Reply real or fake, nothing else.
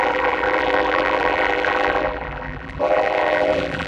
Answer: fake